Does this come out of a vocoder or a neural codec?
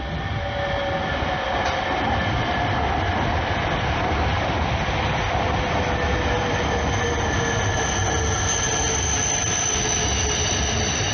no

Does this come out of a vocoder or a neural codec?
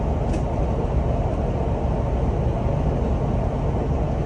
no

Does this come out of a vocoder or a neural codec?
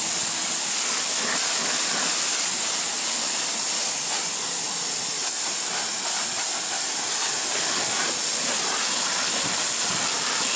no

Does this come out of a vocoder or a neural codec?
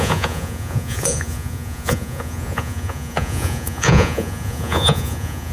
yes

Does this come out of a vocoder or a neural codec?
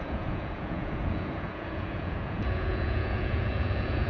yes